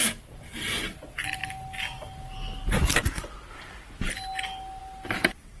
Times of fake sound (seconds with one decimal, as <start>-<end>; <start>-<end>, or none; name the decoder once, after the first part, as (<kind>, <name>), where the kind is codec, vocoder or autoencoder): none